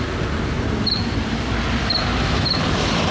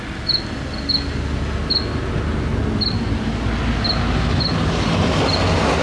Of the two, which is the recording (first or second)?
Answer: second